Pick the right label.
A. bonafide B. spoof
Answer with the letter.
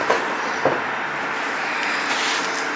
A